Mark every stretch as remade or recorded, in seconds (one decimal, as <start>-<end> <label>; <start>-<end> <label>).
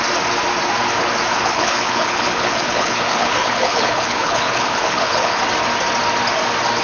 0.0-1.3 recorded; 1.3-5.4 remade; 5.4-6.8 recorded